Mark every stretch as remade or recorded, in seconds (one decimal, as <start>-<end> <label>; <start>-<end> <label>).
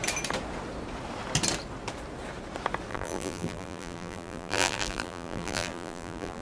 0.0-2.9 recorded; 2.9-6.4 remade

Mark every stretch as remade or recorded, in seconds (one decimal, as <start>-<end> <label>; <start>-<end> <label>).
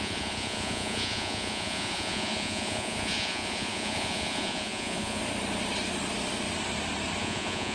0.0-5.2 remade; 5.2-7.2 recorded; 7.2-7.7 remade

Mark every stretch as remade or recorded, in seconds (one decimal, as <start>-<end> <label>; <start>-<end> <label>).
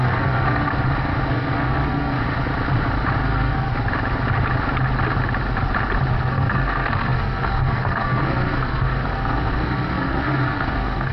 0.0-0.7 remade; 0.7-1.3 recorded; 1.3-2.2 remade; 2.2-3.2 recorded; 3.2-3.7 remade; 3.7-6.1 recorded; 6.1-11.1 remade